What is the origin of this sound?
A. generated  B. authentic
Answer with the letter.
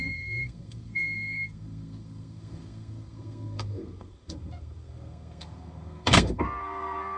A